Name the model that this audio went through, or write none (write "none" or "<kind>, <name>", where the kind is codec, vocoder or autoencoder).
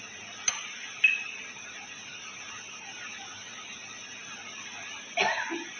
none